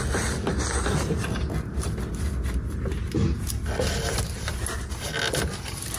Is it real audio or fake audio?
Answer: real